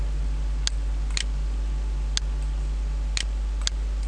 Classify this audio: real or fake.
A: real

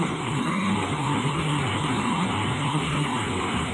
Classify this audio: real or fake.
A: fake